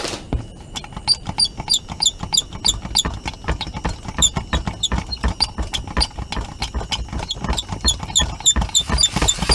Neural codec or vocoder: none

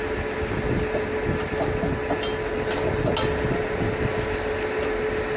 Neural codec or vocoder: none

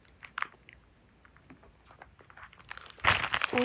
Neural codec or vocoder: none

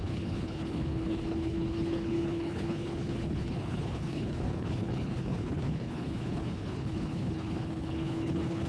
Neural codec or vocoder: codec, HILCodec